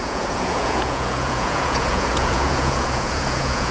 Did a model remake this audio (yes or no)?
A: yes